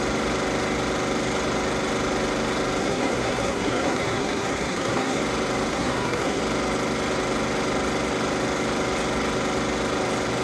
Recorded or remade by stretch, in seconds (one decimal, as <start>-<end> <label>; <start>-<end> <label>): 0.0-2.8 recorded; 2.8-5.2 remade; 5.2-5.7 recorded; 5.7-6.4 remade; 6.4-10.4 recorded